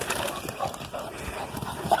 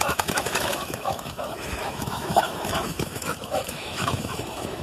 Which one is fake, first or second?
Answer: second